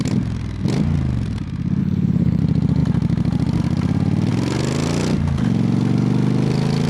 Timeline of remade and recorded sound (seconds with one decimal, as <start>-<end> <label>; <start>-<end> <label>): 0.0-1.8 recorded; 1.8-2.4 remade; 2.4-6.9 recorded